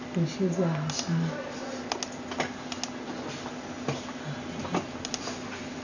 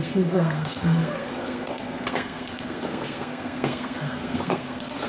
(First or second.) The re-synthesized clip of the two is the second